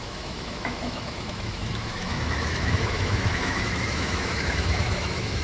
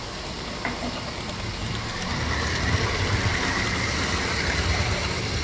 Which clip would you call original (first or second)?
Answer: second